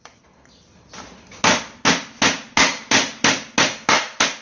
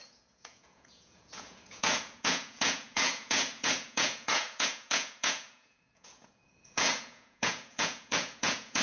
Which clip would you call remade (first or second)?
second